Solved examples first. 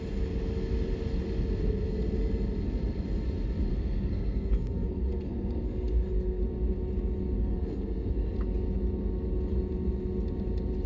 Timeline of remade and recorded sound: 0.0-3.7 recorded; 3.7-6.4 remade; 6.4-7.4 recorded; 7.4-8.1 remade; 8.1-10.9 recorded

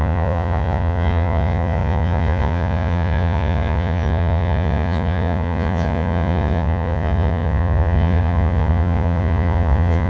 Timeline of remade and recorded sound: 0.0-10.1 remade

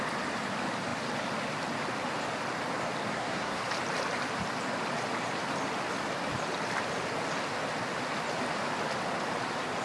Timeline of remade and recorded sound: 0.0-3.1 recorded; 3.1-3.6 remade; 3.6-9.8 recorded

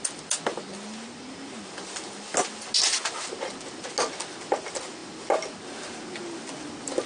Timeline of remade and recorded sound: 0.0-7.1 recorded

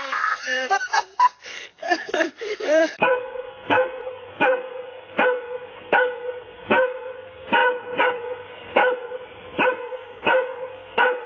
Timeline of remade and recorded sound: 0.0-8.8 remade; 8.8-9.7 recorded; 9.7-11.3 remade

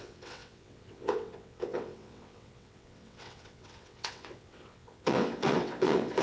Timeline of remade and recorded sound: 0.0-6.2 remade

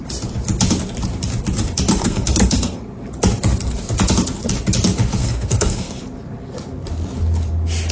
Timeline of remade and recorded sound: 0.0-2.0 recorded; 2.0-2.8 remade; 2.8-5.2 recorded; 5.2-6.0 remade; 6.0-7.9 recorded